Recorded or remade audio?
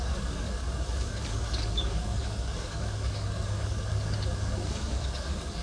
remade